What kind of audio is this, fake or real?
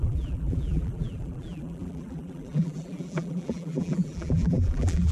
fake